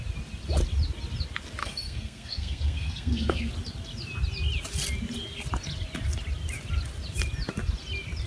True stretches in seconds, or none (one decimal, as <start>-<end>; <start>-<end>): 0.0-1.6; 3.5-8.3